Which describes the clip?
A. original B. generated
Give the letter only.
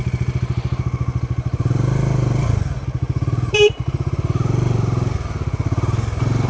A